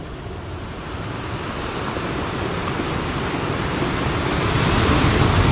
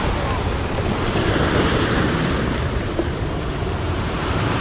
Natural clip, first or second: first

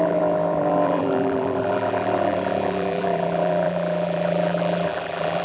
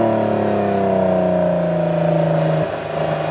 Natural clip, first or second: second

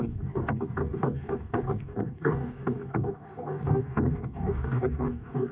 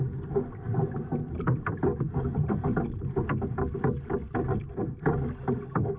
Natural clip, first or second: second